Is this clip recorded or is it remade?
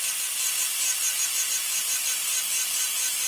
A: recorded